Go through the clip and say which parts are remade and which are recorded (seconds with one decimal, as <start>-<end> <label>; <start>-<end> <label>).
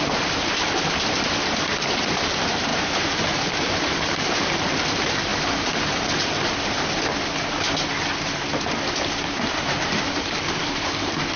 0.0-5.3 remade; 5.3-9.3 recorded; 9.3-11.4 remade